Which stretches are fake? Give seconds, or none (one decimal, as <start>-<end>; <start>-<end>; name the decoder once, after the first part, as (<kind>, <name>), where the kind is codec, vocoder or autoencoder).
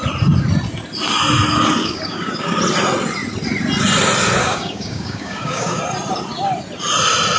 1.8-2.6 (codec, DAC); 4.4-5.8